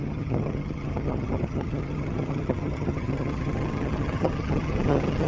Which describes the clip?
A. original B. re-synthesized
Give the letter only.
B